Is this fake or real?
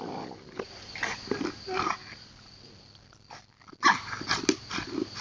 real